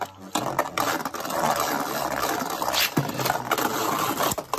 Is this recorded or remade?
recorded